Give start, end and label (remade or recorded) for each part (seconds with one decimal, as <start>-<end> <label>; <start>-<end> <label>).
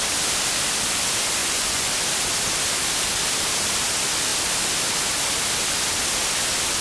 0.0-1.4 recorded; 1.4-1.9 remade; 1.9-6.8 recorded